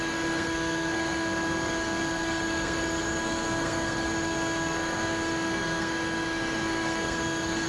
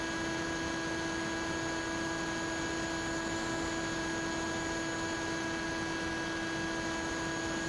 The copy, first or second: first